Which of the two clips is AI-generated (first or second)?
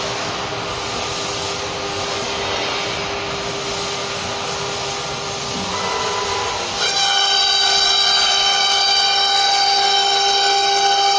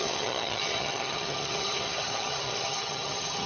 second